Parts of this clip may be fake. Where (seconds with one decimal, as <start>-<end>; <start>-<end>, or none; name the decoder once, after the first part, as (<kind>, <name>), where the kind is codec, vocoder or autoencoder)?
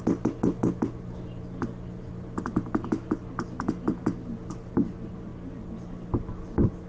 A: none